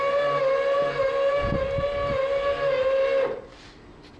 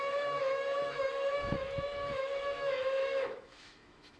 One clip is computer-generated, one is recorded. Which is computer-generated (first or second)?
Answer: second